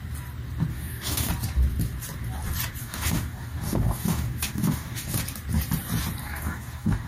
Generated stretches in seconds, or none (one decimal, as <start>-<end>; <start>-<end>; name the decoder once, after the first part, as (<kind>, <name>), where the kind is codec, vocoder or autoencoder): 0.7-1.3 (codec, DAC); 2.8-5.2; 6.2-7.1